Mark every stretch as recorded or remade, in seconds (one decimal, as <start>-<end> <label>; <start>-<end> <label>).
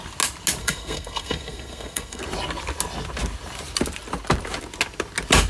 0.0-0.6 recorded; 0.6-2.2 remade; 2.2-5.5 recorded